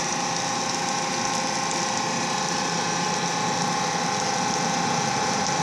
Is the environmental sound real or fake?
real